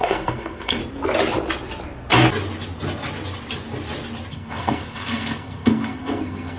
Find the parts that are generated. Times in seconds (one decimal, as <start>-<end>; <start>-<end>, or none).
0.0-0.8; 4.3-6.6